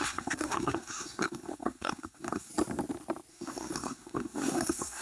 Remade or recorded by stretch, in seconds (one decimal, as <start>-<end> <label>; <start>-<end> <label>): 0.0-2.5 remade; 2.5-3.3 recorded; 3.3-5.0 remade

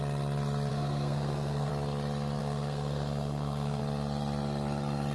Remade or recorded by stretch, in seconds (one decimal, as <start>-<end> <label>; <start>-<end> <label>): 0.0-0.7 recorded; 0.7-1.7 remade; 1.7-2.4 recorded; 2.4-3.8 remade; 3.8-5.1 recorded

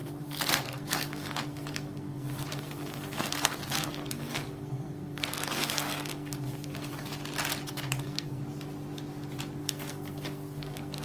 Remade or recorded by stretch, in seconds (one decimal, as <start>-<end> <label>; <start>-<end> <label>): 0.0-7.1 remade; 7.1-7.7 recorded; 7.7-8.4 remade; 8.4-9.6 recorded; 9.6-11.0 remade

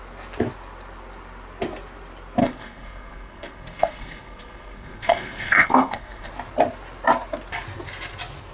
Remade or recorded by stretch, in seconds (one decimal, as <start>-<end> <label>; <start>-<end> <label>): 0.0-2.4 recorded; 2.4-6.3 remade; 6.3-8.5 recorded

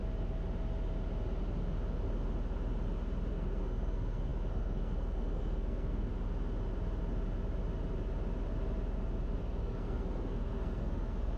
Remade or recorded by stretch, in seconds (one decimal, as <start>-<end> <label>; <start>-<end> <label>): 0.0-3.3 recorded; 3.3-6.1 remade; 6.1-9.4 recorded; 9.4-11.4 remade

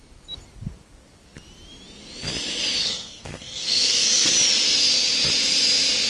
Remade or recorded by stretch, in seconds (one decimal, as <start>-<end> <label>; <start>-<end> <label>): 0.0-2.8 recorded; 2.8-4.3 remade; 4.3-6.1 recorded